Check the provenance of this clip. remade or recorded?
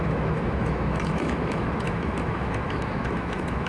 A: remade